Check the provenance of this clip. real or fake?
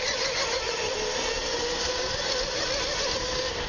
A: real